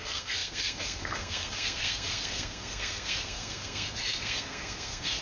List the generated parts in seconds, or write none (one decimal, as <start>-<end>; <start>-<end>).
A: 0.0-5.2